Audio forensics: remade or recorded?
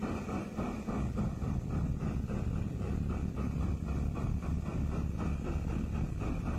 recorded